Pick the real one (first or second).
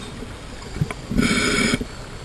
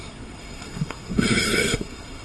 first